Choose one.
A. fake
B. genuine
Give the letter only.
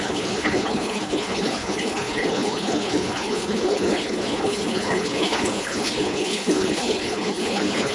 A